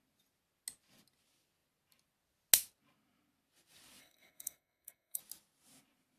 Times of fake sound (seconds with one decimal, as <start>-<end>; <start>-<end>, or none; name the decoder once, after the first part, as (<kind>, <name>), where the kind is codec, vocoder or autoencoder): 4.0-5.2 (codec, SNAC)